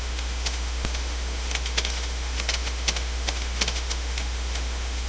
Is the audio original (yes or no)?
no